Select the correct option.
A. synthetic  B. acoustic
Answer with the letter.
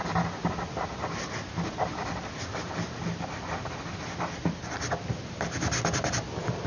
B